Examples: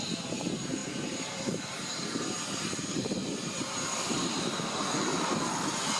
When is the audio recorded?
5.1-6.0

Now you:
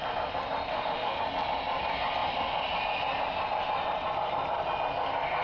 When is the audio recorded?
0.0-0.7; 1.2-5.4